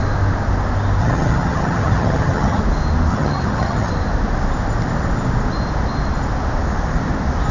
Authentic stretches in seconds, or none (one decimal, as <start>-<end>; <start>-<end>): 0.0-1.0; 2.6-3.1; 3.9-7.5